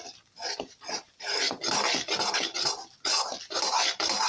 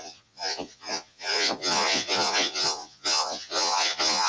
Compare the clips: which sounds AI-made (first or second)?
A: second